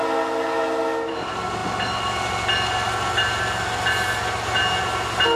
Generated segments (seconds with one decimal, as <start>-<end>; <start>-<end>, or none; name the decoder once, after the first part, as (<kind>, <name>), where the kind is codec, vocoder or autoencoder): none